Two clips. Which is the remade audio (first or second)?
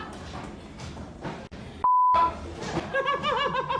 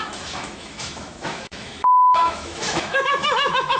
second